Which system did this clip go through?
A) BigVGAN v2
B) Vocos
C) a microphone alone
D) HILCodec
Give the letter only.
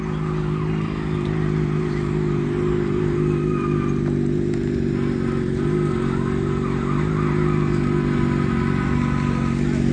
C